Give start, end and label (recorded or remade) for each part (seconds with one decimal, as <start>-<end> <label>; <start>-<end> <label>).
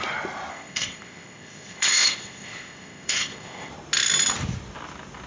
0.0-0.5 recorded; 0.5-3.7 remade; 3.7-5.3 recorded